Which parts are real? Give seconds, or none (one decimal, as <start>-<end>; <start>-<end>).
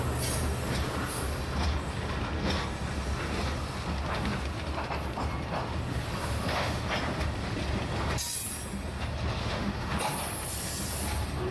0.0-6.2; 6.8-9.4; 10.0-11.5